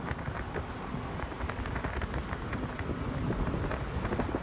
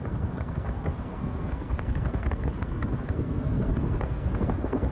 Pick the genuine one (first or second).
first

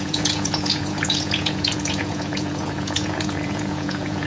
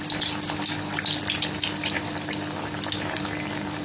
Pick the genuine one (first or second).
second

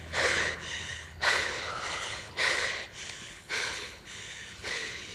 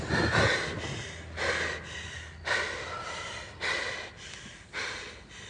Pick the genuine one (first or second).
second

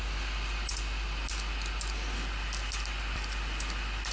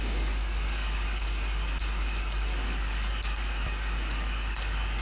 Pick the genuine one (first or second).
first